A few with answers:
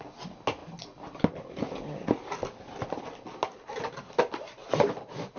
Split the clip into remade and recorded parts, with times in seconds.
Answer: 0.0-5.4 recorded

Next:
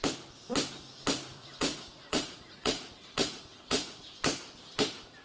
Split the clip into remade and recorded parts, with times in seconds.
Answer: 0.0-1.3 recorded; 1.3-4.2 remade; 4.2-5.2 recorded

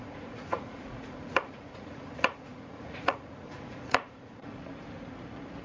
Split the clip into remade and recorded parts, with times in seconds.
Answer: 0.0-5.6 remade

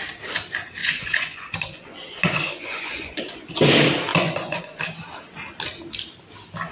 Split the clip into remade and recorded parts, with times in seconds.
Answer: 0.0-0.8 recorded; 0.8-3.5 remade; 3.5-4.1 recorded; 4.1-4.8 remade; 4.8-6.7 recorded

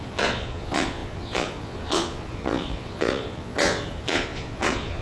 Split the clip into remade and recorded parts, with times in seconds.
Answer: 0.0-5.0 remade